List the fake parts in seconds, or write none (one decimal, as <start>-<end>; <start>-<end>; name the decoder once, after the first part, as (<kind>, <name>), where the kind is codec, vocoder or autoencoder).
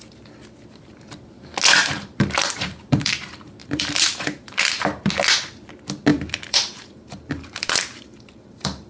1.8-3.1 (vocoder, BigVGAN v2); 3.6-5.1; 6.1-8.9